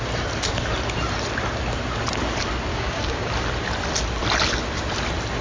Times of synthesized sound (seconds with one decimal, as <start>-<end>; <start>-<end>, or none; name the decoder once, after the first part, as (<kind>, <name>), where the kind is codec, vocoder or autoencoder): 2.7-3.3 (codec, DAC)